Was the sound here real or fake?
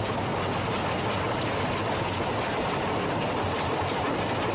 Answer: real